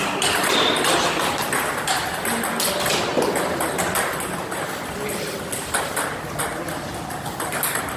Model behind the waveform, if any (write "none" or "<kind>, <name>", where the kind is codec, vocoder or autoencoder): none